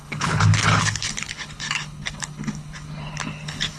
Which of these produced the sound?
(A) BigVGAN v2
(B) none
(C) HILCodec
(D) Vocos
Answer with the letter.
C